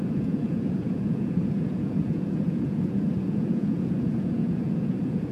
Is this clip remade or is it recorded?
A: remade